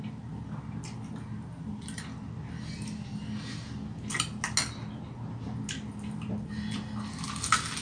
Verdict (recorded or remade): recorded